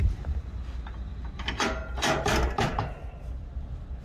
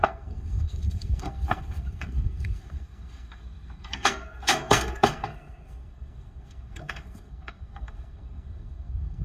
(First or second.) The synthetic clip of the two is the second